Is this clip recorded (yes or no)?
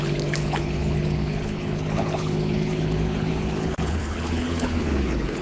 no